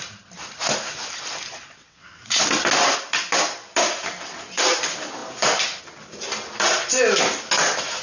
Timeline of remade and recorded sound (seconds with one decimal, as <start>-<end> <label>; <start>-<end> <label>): 0.0-1.8 recorded; 1.8-2.4 remade; 2.4-8.0 recorded